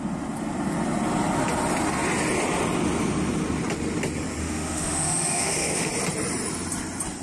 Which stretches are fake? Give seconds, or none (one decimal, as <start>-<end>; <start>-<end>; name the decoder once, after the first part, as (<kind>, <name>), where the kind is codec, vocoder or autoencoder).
4.4-5.9 (autoencoder, DAC-VAE)